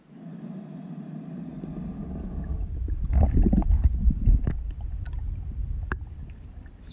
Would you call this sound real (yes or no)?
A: yes